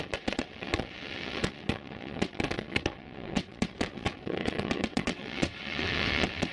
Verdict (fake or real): fake